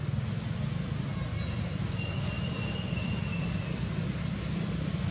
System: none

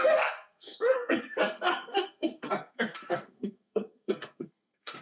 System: codec, SNAC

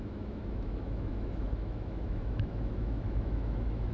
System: autoencoder, DAC-VAE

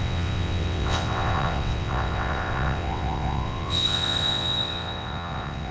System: vocoder, WaveNeXt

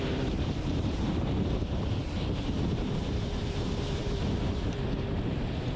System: vocoder, BigVGAN v2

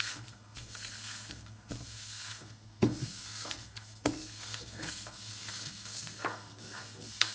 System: codec, SNAC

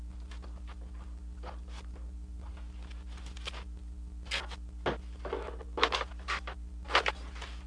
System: none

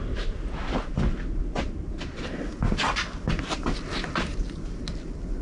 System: none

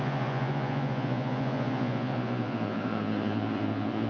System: vocoder, Vocos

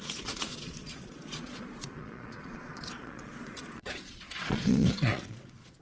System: vocoder, Vocos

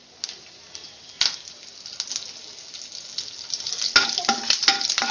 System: none